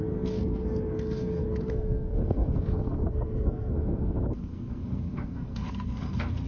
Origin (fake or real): fake